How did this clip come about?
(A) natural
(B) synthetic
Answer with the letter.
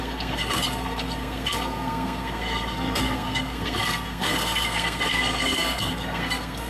B